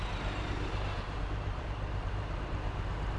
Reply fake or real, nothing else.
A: fake